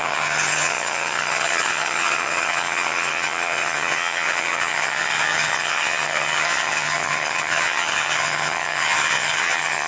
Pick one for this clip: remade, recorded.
remade